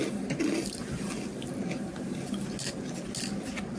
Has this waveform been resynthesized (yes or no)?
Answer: no